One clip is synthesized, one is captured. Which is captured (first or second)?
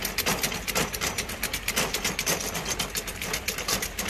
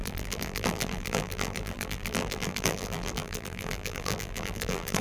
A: first